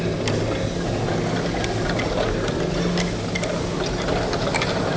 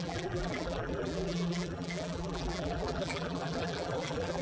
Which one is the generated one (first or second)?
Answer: second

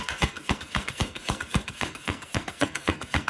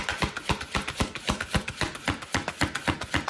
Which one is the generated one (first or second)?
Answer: first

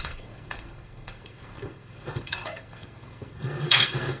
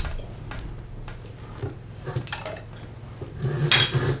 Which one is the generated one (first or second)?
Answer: first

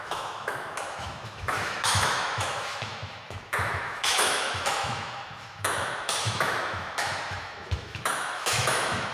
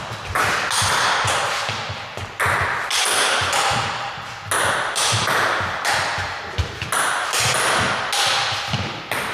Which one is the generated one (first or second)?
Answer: first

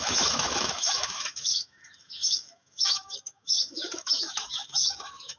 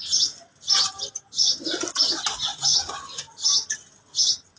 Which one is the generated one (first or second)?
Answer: first